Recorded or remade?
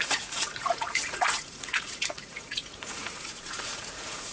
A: remade